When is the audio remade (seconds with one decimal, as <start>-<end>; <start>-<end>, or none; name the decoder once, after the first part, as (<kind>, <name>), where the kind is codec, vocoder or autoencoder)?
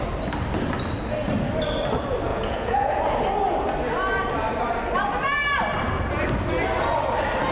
2.3-3.0 (vocoder, Vocos)